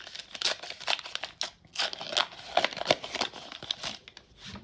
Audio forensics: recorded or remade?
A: recorded